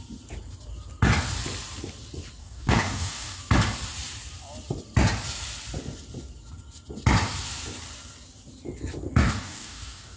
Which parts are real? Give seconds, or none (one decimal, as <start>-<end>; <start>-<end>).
0.0-2.4; 3.4-9.2